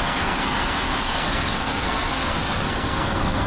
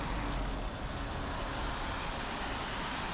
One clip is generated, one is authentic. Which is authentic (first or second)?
second